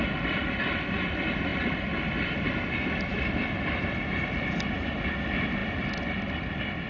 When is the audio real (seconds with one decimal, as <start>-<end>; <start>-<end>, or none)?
0.0-6.9